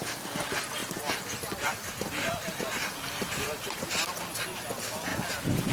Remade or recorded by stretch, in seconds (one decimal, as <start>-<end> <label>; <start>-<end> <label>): 0.0-0.8 recorded; 0.8-4.2 remade; 4.2-5.7 recorded